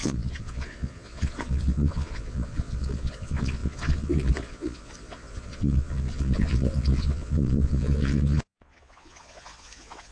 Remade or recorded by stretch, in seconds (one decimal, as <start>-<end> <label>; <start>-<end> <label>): 0.0-10.1 remade